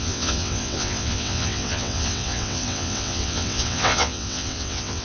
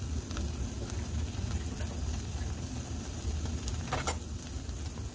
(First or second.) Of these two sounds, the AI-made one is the first